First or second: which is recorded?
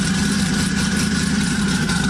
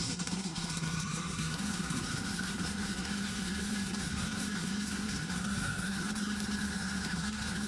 first